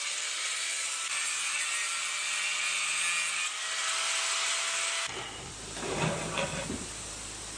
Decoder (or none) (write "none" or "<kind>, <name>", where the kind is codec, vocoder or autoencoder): none